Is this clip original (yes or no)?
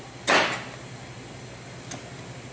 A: yes